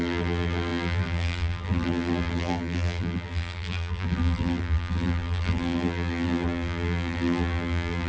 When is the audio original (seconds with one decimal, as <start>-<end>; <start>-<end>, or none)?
none